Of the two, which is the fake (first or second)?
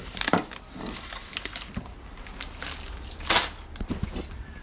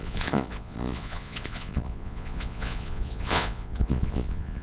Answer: second